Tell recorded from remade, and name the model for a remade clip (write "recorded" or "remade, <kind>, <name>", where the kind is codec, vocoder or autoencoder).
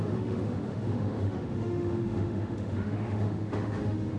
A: remade, autoencoder, DAC-VAE